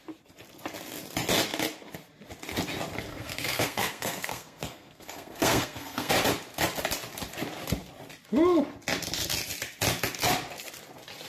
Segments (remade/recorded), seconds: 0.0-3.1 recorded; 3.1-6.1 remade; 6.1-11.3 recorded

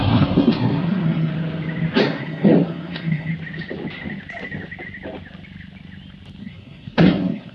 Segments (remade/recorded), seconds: 0.0-1.3 remade; 1.3-2.0 recorded; 2.0-3.3 remade; 3.3-6.4 recorded; 6.4-7.5 remade

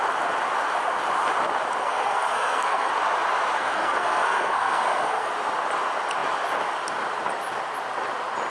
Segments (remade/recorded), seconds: 0.0-1.8 recorded; 1.8-2.9 remade; 2.9-3.6 recorded; 3.6-5.3 remade; 5.3-8.5 recorded

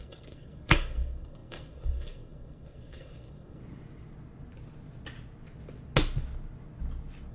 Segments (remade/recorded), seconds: 0.0-3.6 remade; 3.6-7.3 recorded

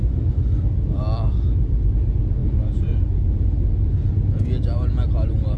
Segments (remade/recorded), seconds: 0.0-5.6 recorded

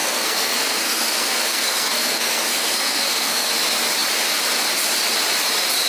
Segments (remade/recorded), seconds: 0.0-3.5 remade; 3.5-5.9 recorded

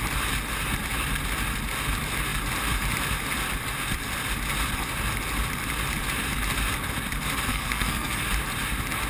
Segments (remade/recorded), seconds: 0.0-7.5 recorded; 7.5-8.2 remade; 8.2-9.1 recorded

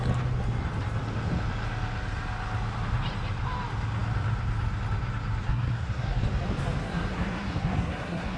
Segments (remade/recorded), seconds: 0.0-5.4 recorded; 5.4-6.2 remade; 6.2-6.8 recorded; 6.8-8.4 remade